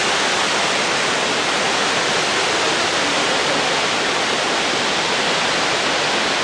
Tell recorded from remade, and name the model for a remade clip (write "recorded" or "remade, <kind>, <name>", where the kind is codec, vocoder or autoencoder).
recorded